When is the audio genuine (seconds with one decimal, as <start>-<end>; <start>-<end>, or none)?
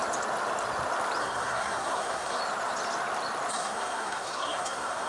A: 0.0-1.2; 2.4-3.5